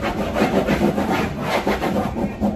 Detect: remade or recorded recorded